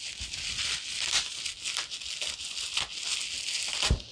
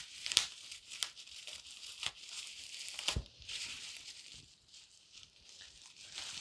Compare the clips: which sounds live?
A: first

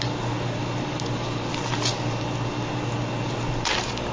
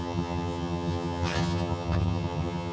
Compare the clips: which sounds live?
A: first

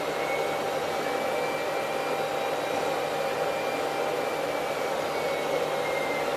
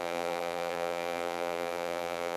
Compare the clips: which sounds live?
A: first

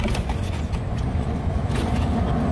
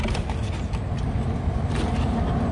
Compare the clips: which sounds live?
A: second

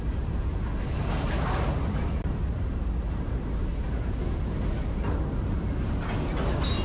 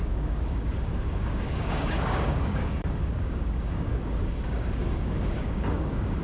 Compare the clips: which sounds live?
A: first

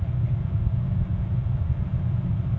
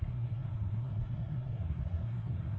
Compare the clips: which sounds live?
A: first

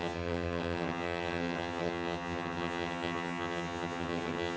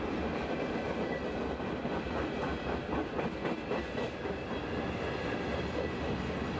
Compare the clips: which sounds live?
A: second